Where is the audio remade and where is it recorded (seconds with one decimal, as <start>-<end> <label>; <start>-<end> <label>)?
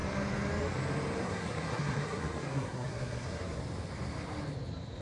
0.0-1.2 recorded; 1.2-3.6 remade; 3.6-5.0 recorded